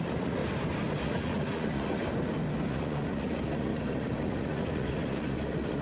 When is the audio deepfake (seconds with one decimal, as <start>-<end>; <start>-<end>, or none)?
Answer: 0.0-0.4; 1.0-2.0; 2.7-5.8